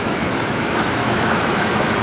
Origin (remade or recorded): remade